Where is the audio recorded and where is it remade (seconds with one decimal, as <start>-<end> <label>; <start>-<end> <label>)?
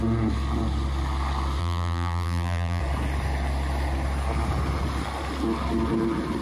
0.0-1.6 recorded; 1.6-2.8 remade; 2.8-6.4 recorded